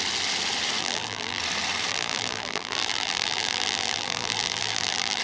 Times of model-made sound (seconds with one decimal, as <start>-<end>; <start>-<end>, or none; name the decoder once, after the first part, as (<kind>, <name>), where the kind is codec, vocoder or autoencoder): 0.8-1.4 (vocoder, BigVGAN v2); 1.9-5.2